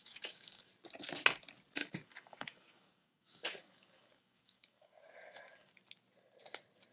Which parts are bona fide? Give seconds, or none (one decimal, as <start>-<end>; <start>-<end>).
0.7-1.8; 5.7-6.9